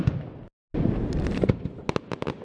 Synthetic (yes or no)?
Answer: no